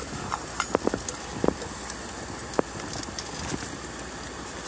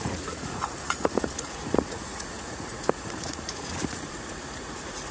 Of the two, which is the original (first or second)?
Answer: first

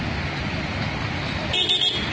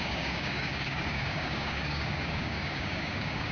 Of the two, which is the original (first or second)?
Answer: first